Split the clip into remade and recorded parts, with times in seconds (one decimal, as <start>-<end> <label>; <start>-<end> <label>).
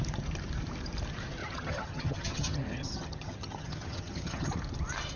0.0-1.4 recorded; 1.4-4.5 remade; 4.5-5.2 recorded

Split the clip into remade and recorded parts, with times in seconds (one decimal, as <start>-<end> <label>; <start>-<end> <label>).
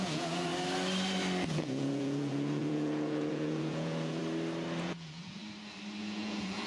0.0-0.5 remade; 0.5-1.5 recorded; 1.5-4.2 remade; 4.2-4.8 recorded; 4.8-5.4 remade; 5.4-6.0 recorded; 6.0-6.7 remade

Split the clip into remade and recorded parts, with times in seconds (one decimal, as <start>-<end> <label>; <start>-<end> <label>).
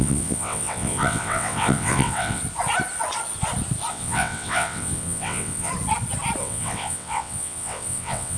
0.0-2.4 remade; 2.4-3.9 recorded; 3.9-5.7 remade; 5.7-6.4 recorded; 6.4-8.4 remade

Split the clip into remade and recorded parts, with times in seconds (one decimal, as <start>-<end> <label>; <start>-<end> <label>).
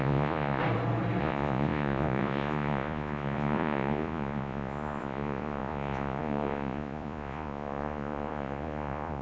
0.0-0.6 remade; 0.6-1.2 recorded; 1.2-9.2 remade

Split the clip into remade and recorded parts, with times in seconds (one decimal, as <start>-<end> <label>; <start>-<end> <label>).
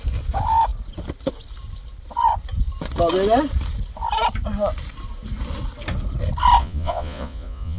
0.0-6.6 recorded; 6.6-7.8 remade